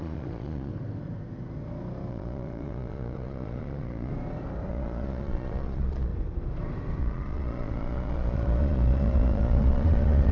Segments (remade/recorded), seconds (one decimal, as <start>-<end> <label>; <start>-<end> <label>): 0.0-0.7 remade; 0.7-2.1 recorded; 2.1-4.1 remade; 4.1-4.7 recorded; 4.7-6.1 remade; 6.1-7.0 recorded; 7.0-10.3 remade

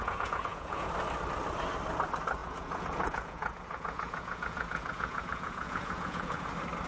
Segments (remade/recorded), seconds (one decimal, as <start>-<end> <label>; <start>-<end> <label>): 0.0-0.9 remade; 0.9-2.4 recorded; 2.4-6.5 remade; 6.5-6.9 recorded

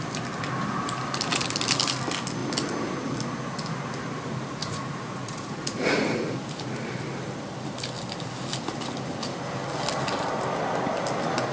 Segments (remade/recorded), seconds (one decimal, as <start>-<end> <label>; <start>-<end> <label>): 0.0-4.6 recorded; 4.6-6.3 remade; 6.3-11.5 recorded

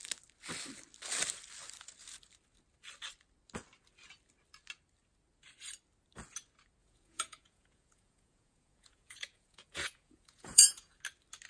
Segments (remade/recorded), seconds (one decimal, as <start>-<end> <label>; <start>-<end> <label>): 0.0-6.8 recorded; 6.8-11.0 remade; 11.0-11.5 recorded

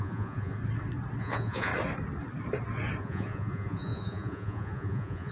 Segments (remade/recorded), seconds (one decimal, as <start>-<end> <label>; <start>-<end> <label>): 0.0-0.6 remade; 0.6-1.2 recorded; 1.2-1.7 remade; 1.7-3.0 recorded; 3.0-5.3 remade

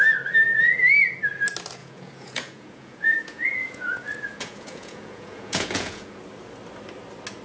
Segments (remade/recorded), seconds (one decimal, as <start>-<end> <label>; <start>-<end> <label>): 0.0-1.8 recorded; 1.8-6.2 remade; 6.2-7.4 recorded

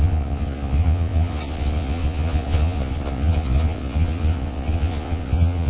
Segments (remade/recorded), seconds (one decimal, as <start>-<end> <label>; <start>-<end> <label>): 0.0-5.7 remade